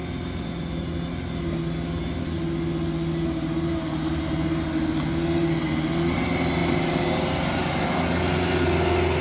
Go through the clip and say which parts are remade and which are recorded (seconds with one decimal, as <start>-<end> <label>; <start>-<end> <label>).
0.0-6.6 recorded; 6.6-7.7 remade; 7.7-9.2 recorded